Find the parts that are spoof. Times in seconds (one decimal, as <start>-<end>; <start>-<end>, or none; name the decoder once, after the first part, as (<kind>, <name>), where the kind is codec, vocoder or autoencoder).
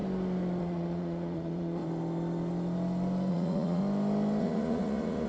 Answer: 0.6-1.8 (vocoder, Vocos); 3.3-3.8; 4.4-5.3